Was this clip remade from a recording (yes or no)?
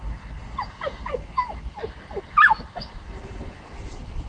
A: no